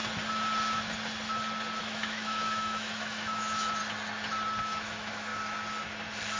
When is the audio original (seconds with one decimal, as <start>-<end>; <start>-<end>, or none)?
0.0-1.8; 3.8-4.6; 5.3-6.4